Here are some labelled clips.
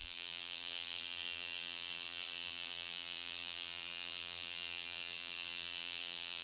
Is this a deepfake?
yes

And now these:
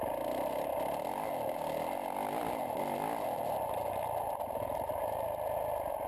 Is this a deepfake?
no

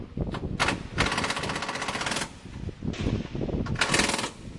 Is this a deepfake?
no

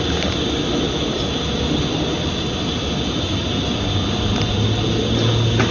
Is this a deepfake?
no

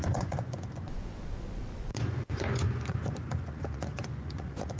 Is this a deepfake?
yes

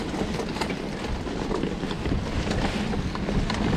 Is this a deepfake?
no